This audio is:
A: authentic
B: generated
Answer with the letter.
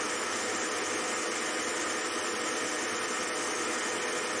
A